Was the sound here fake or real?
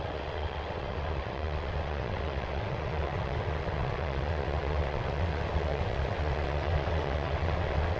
fake